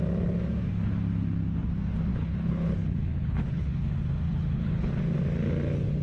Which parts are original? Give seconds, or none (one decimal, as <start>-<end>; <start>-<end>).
0.0-2.1; 3.9-4.3; 4.9-6.0